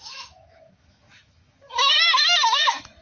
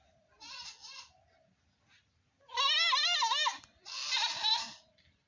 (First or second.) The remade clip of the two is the first